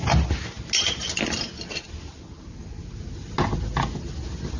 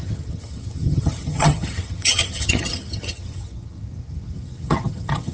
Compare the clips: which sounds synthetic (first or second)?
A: second